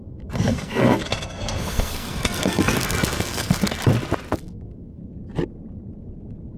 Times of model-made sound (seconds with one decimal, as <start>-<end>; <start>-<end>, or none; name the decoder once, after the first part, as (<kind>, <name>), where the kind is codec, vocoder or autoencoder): 0.0-3.9 (codec, SNAC); 4.4-5.0